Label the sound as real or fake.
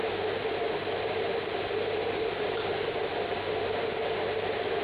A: real